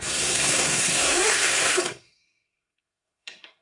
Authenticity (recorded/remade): remade